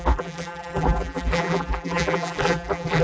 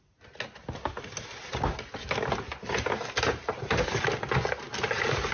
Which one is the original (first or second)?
second